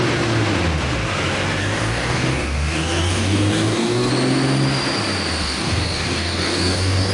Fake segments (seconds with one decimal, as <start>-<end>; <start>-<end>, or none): 1.6-4.1; 5.4-7.1